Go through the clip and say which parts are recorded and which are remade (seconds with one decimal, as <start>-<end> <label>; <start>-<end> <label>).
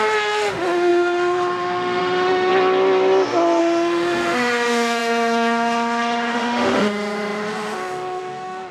0.0-2.5 remade; 2.5-3.6 recorded; 3.6-8.7 remade